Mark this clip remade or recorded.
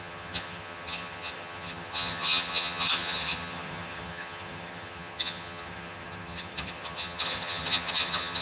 remade